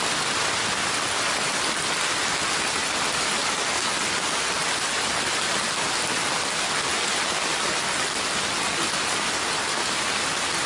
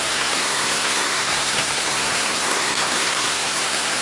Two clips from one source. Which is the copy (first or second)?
second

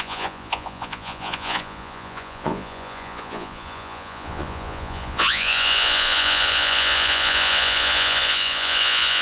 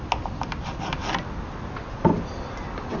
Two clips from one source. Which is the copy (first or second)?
first